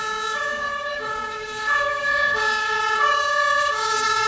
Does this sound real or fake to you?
fake